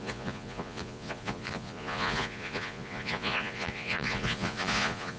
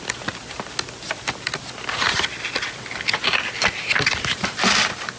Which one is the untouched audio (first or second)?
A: second